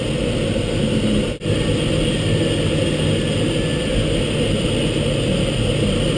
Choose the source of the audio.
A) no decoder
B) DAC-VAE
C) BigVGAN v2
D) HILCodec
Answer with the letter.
A